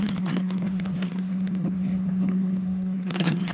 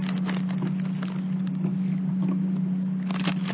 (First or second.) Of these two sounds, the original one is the second